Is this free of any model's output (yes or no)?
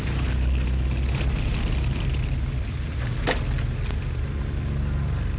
yes